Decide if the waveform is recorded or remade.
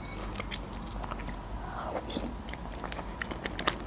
recorded